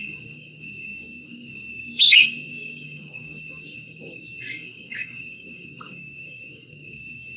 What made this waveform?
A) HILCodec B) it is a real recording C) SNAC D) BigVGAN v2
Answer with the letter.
C